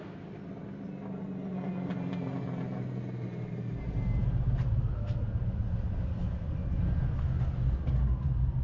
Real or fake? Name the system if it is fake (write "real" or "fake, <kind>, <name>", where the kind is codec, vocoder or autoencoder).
real